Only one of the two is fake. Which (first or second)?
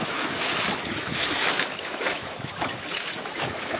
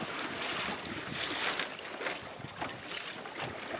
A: first